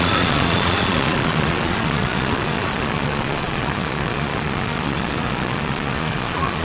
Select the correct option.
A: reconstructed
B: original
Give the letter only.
A